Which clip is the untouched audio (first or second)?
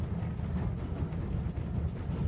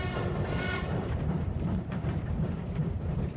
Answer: first